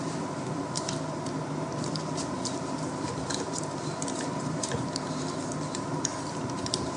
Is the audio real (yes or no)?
no